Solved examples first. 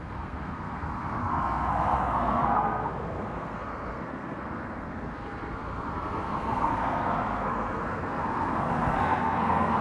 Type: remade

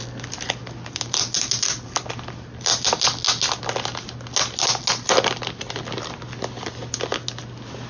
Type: recorded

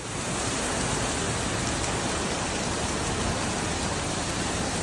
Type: recorded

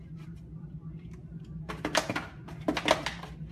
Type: recorded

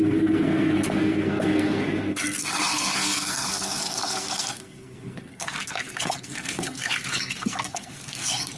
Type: remade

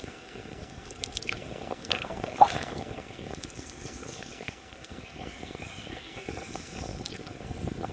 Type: remade